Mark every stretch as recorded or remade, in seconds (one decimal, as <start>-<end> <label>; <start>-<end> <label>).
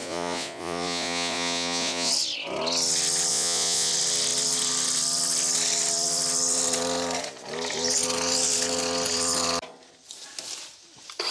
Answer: 0.0-2.1 remade; 2.1-3.3 recorded; 3.3-3.9 remade; 3.9-11.3 recorded